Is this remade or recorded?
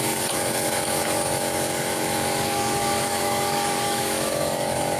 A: remade